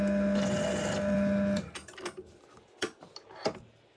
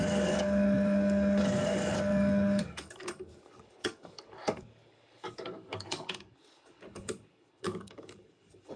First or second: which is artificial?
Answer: second